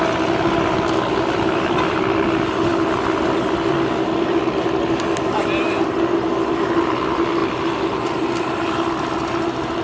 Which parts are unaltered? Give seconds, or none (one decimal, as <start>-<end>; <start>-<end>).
0.0-9.8